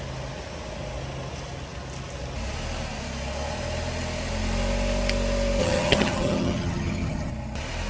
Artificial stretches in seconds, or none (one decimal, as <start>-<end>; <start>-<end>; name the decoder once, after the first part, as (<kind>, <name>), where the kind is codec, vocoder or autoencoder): 5.6-7.3 (vocoder, HiFi-GAN)